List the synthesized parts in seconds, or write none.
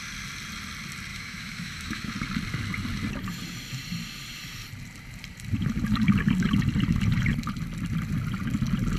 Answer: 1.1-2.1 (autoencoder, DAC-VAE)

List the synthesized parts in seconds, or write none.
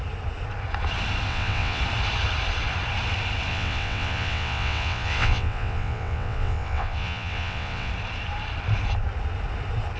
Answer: 1.3-1.8 (vocoder, WaveNeXt); 3.5-7.9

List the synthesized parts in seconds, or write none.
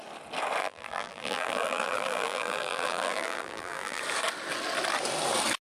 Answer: 0.6-4.0 (vocoder, BigVGAN v2)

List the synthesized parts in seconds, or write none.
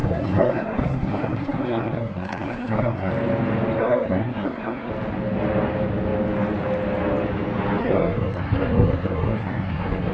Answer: 0.0-3.1 (codec, SNAC); 3.8-4.9; 7.8-10.1